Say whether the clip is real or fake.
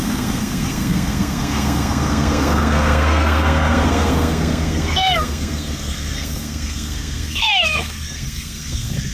fake